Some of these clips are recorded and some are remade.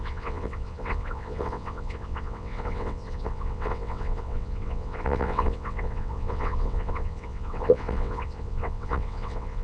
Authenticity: remade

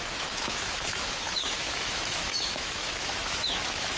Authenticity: remade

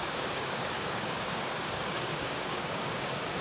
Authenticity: remade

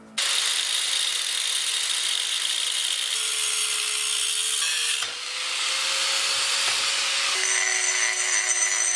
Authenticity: recorded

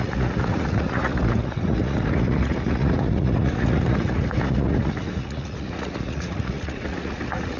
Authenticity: remade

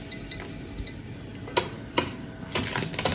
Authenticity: recorded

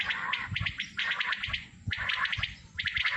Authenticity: remade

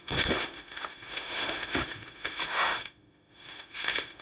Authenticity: remade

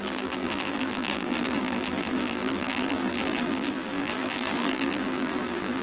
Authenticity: remade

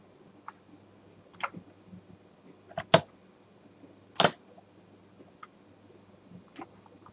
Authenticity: recorded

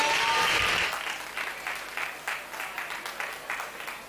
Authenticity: recorded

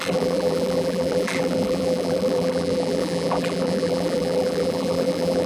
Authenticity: remade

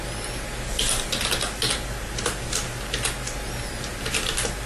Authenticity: recorded